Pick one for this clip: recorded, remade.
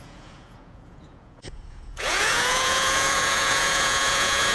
remade